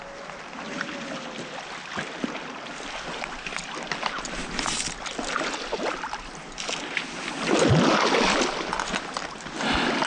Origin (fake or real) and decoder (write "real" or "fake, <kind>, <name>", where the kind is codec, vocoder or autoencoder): real